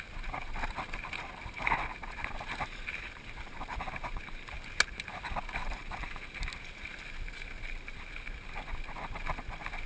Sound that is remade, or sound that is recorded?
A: recorded